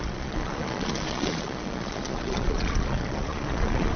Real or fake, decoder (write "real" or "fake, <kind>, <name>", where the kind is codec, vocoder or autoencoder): fake, vocoder, Vocos